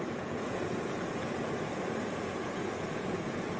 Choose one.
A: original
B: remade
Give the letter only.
B